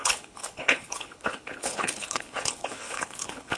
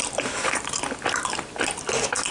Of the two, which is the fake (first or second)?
first